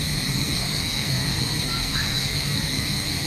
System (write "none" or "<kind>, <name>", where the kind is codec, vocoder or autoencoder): codec, SNAC